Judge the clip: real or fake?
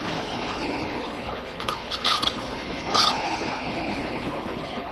fake